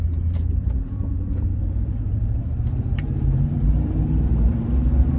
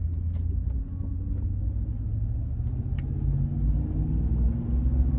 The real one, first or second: second